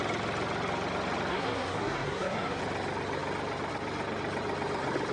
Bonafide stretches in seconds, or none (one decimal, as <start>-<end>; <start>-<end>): 0.0-1.3; 2.6-5.1